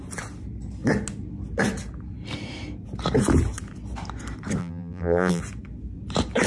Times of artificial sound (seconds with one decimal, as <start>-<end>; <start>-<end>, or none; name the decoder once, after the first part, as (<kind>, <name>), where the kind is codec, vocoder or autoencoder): 4.6-5.4 (vocoder, BigVGAN v2)